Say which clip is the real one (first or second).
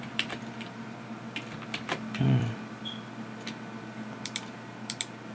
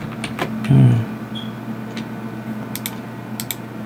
second